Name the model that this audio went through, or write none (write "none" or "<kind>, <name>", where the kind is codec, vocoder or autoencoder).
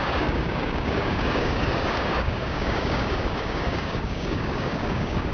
codec, DAC